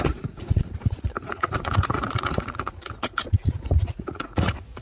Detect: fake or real fake